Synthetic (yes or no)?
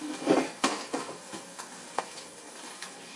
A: yes